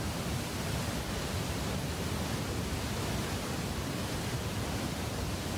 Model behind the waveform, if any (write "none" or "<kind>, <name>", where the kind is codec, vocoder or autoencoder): vocoder, BigVGAN v2